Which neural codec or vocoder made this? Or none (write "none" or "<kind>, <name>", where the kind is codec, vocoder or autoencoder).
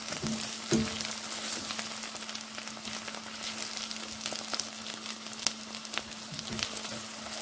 none